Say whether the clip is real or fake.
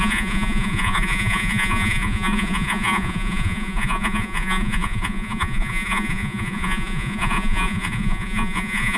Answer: fake